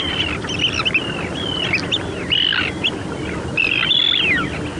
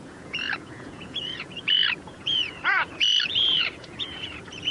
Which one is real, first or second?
first